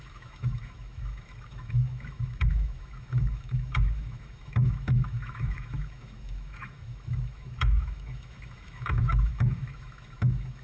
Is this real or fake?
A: fake